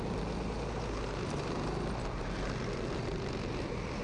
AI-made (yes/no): no